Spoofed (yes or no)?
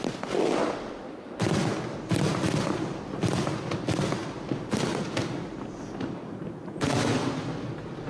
no